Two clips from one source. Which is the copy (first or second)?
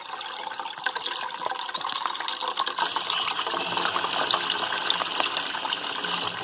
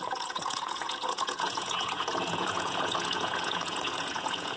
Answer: second